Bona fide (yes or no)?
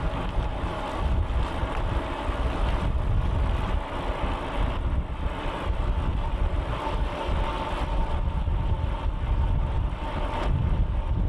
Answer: yes